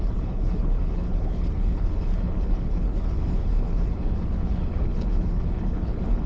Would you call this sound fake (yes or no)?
yes